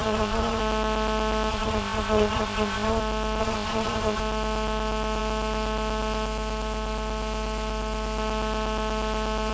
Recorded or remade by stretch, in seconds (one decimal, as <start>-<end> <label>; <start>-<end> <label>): 0.0-0.6 remade; 0.6-1.5 recorded; 1.5-3.0 remade; 3.0-3.4 recorded; 3.4-4.2 remade; 4.2-9.5 recorded